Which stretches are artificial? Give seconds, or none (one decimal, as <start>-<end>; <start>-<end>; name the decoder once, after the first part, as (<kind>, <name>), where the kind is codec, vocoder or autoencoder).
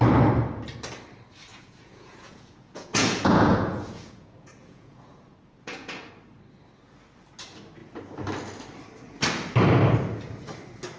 1.5-6.1 (vocoder, Vocos)